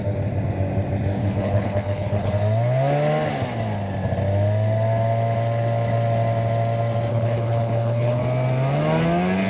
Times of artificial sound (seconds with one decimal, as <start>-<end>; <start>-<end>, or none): 1.2-2.3; 7.1-8.2